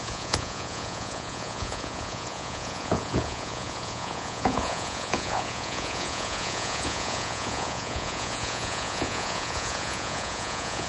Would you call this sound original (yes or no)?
no